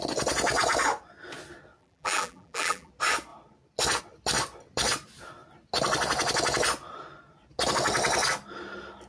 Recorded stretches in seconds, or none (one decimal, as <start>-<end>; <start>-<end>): 0.0-1.8; 2.9-9.1